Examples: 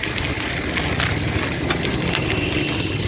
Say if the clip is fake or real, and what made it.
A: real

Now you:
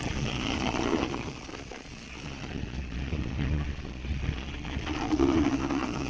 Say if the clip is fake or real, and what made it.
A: fake, vocoder, Vocos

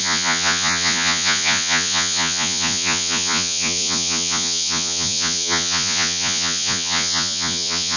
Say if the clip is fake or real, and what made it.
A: fake, vocoder, Vocos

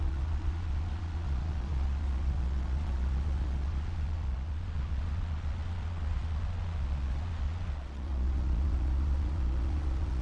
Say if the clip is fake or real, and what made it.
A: fake, vocoder, Vocos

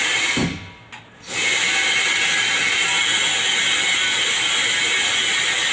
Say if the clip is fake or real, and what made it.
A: real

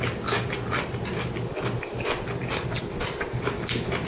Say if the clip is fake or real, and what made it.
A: real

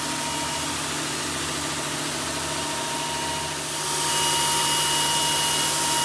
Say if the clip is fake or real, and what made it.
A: real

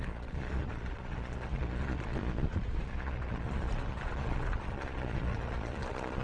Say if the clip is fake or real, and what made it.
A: fake, vocoder, Vocos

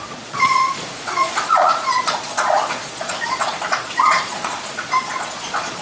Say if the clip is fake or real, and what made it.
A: fake, vocoder, Vocos